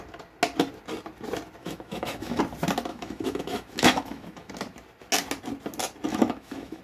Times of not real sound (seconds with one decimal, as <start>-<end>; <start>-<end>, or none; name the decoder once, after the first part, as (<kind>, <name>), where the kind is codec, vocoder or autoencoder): 1.6-2.4 (autoencoder, DAC-VAE); 2.9-4.5; 6.1-6.8